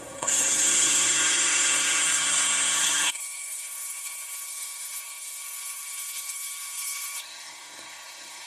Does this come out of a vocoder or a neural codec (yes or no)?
yes